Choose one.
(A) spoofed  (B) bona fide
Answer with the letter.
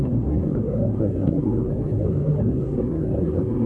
A